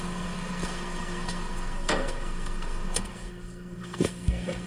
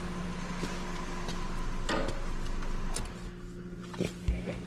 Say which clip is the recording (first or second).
second